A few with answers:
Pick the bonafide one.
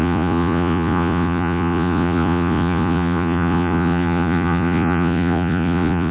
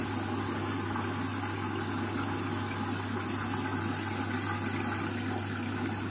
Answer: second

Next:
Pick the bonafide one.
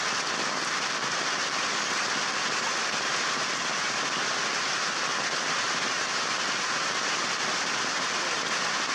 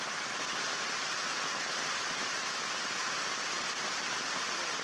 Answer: first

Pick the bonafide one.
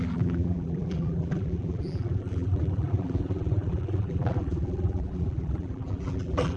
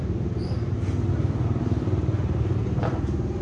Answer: second